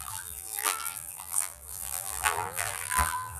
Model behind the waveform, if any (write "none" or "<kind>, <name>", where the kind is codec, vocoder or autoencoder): vocoder, BigVGAN v2